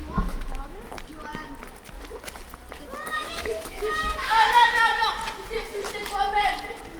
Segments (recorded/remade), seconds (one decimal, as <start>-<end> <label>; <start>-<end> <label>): 0.0-0.8 remade; 0.8-3.1 recorded; 3.1-5.1 remade; 5.1-7.0 recorded